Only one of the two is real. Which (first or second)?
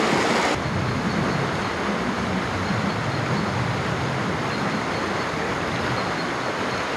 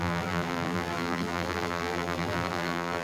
first